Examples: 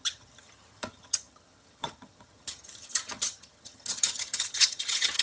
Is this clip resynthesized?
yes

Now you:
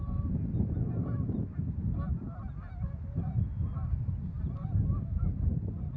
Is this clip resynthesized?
no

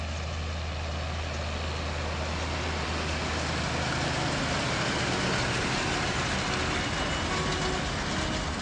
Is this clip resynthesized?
no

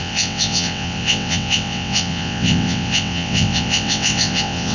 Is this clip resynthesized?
yes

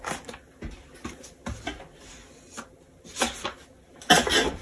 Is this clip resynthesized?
no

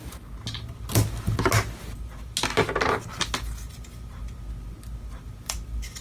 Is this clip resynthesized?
no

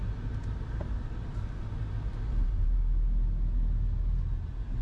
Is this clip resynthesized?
no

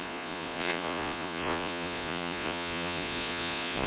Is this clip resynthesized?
yes